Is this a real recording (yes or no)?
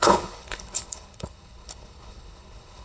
no